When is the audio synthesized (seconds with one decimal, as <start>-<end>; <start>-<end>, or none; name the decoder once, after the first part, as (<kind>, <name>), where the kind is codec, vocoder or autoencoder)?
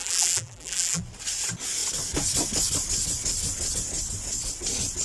0.0-1.0 (vocoder, BigVGAN v2)